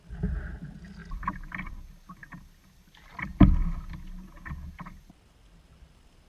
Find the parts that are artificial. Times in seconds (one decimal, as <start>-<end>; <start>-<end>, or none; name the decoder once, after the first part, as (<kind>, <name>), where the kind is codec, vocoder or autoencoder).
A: none